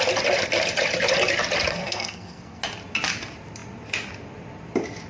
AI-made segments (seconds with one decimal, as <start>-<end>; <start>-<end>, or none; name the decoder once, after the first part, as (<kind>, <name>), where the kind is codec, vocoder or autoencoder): 1.7-2.6 (codec, SNAC)